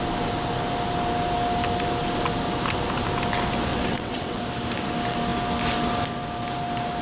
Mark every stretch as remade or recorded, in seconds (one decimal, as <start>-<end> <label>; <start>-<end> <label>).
0.0-3.7 recorded; 3.7-4.4 remade; 4.4-7.0 recorded